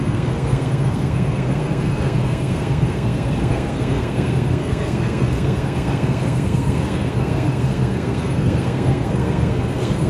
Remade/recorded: remade